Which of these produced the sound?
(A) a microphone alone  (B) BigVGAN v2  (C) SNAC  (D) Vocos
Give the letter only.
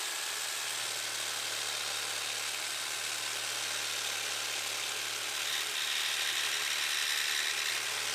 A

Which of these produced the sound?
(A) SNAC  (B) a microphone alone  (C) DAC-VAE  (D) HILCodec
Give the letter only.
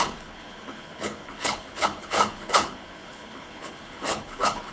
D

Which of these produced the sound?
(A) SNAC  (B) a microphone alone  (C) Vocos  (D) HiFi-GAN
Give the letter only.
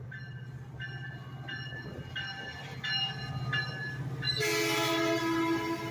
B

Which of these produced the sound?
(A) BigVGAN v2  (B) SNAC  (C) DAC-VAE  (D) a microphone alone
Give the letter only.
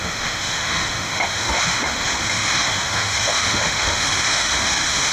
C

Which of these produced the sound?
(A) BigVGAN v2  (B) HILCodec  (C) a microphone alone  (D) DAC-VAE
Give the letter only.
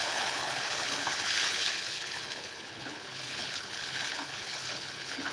B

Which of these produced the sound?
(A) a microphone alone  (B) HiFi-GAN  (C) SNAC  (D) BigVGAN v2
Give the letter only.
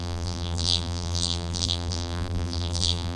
D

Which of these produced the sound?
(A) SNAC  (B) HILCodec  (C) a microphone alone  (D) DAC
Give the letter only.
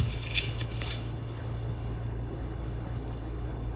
B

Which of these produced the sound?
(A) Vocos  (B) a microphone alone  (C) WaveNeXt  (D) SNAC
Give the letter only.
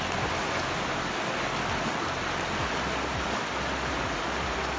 B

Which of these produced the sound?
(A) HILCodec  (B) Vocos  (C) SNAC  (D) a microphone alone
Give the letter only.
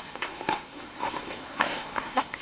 C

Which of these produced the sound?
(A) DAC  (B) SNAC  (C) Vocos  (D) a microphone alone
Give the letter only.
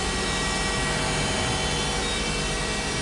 D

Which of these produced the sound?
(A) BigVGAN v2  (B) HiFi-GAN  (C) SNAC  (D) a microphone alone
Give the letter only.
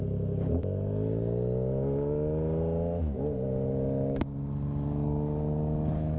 D